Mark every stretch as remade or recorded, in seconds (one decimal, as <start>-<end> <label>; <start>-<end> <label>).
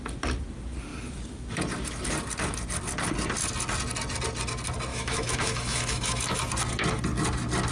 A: 0.0-4.9 recorded; 4.9-6.5 remade; 6.5-7.7 recorded